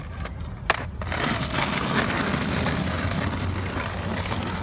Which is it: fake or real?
real